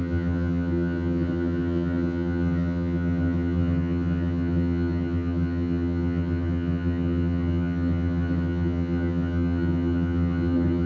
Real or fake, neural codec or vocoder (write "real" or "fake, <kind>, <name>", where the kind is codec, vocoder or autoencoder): fake, vocoder, HiFi-GAN